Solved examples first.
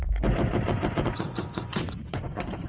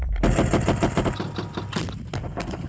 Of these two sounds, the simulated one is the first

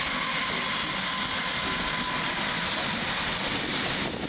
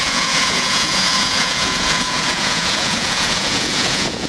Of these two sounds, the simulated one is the second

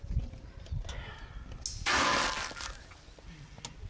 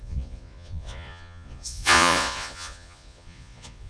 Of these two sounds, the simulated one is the second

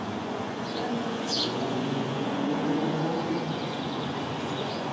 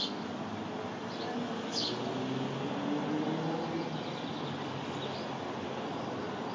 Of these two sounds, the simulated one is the first